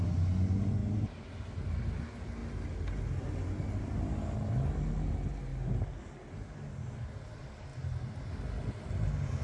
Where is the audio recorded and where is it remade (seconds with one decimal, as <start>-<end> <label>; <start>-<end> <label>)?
0.0-9.4 recorded